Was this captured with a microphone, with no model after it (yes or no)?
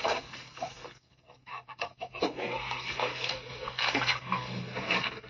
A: no